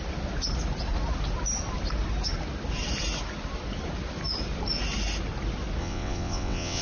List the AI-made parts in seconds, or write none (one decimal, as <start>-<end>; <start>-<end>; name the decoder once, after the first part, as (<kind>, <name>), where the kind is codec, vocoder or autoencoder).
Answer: 5.8-6.8 (vocoder, WaveNeXt)